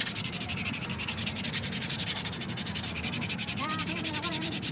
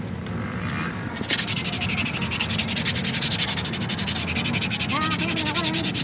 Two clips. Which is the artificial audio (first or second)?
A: first